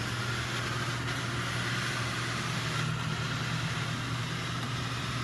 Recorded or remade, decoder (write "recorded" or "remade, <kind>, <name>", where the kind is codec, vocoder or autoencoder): recorded